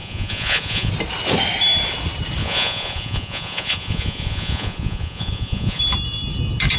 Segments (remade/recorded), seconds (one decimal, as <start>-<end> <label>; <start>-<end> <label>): 0.0-0.9 remade; 0.9-2.4 recorded; 2.4-5.8 remade; 5.8-6.8 recorded